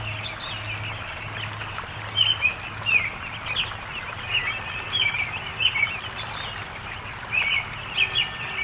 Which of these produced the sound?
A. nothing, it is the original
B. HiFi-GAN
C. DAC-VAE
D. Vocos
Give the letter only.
A